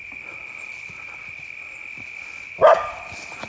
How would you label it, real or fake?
real